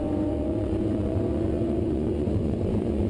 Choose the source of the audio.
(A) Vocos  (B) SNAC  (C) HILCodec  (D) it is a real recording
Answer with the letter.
A